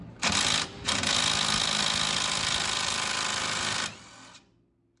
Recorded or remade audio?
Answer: recorded